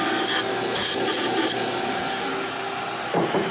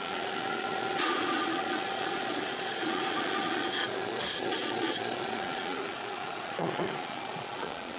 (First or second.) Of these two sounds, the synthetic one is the second